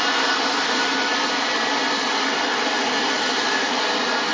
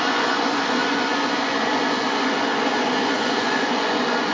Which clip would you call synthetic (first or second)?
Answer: second